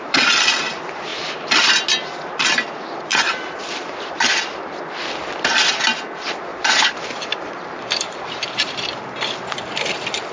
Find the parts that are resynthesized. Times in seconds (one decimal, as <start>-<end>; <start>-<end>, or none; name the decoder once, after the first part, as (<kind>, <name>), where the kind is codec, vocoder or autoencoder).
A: 6.5-8.7 (vocoder, BigVGAN v2)